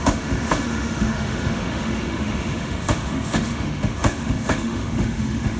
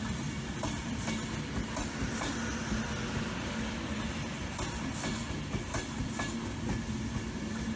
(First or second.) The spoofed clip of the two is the first